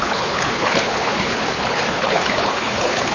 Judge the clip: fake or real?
fake